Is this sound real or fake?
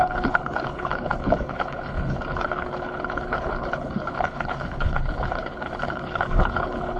fake